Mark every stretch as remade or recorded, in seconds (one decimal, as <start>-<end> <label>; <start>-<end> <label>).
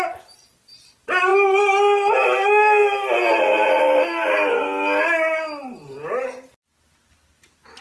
0.0-7.8 recorded